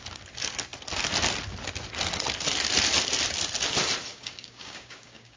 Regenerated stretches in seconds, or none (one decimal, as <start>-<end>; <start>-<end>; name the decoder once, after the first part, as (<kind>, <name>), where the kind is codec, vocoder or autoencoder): 4.1-5.4 (codec, DAC)